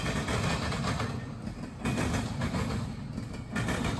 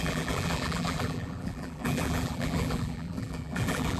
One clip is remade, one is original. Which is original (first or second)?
first